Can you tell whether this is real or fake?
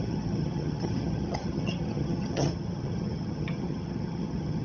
fake